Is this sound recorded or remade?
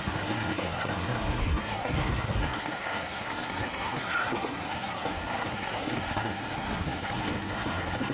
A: remade